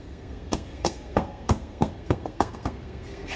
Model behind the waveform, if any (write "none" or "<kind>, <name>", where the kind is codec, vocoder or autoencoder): codec, SNAC